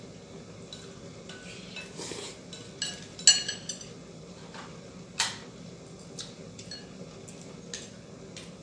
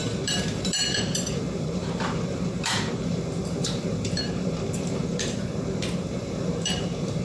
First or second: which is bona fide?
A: first